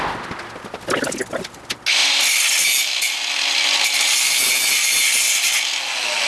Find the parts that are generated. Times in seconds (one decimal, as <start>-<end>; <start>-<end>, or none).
none